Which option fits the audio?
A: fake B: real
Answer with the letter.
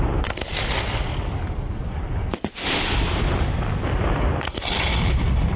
B